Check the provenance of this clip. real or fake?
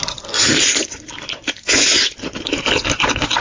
real